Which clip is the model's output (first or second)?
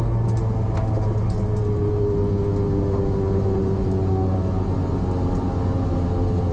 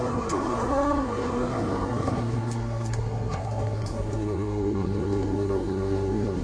second